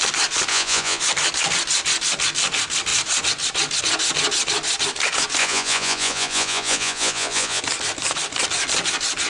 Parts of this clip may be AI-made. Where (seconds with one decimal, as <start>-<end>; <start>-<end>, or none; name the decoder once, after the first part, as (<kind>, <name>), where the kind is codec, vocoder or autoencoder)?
0.5-1.0 (vocoder, Vocos); 5.4-7.6